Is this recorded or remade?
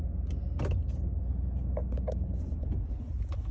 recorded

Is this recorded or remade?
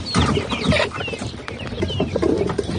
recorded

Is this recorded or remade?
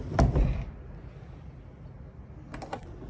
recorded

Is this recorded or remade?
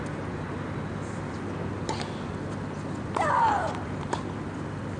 recorded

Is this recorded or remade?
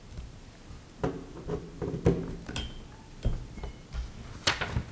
recorded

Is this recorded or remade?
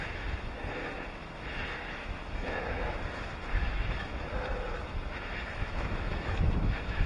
remade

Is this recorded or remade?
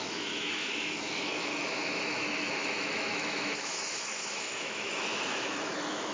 remade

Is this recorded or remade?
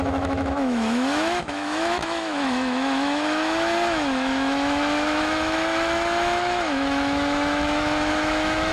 remade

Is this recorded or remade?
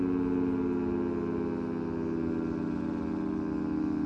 recorded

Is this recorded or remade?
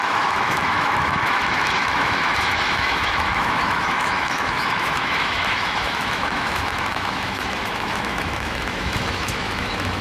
remade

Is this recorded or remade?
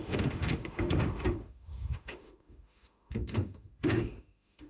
remade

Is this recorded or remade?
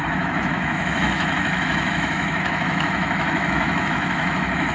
remade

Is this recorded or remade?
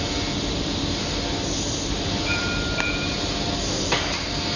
recorded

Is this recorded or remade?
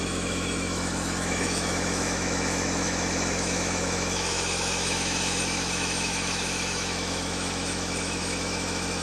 remade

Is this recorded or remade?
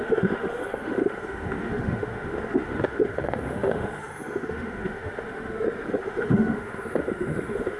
remade